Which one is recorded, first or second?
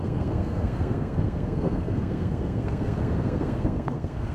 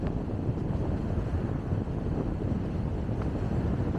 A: second